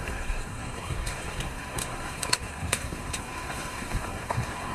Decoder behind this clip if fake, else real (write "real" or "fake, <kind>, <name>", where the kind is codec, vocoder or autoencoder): fake, codec, SNAC